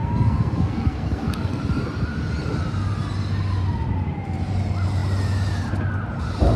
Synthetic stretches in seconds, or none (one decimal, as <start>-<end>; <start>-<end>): 0.0-1.6